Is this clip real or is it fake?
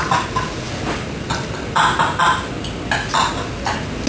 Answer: real